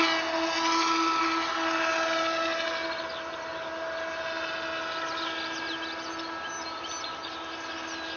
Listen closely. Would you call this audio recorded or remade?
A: recorded